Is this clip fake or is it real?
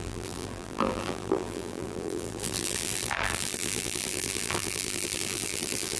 fake